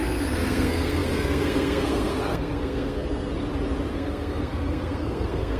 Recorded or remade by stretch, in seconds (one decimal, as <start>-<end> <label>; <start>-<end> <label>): 0.0-3.3 remade; 3.3-3.9 recorded; 3.9-5.6 remade